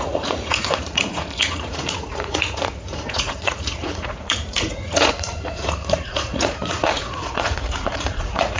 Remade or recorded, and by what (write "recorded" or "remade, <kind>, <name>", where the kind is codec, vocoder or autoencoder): remade, vocoder, Vocos